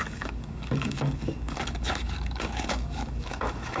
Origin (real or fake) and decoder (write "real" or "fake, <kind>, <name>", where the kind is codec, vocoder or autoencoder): fake, codec, DAC